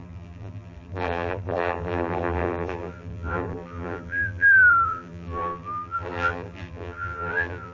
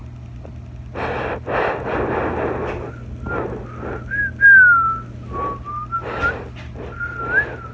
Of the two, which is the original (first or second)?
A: second